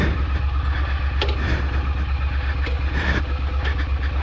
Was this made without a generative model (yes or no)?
yes